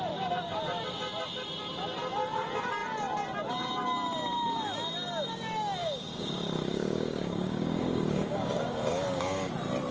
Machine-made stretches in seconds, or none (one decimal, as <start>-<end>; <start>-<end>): 5.8-9.5